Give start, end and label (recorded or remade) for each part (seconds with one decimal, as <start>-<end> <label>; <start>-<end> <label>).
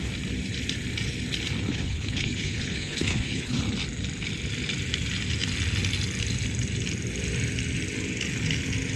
0.0-1.7 recorded; 1.7-3.6 remade; 3.6-9.0 recorded